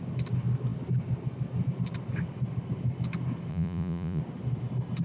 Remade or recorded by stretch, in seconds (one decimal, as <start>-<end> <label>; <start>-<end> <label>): 0.0-3.5 recorded; 3.5-4.2 remade; 4.2-5.0 recorded